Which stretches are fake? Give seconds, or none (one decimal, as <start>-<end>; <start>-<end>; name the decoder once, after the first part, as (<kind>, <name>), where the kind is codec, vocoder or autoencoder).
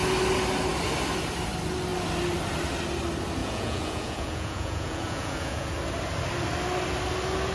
3.4-5.7 (vocoder, Vocos)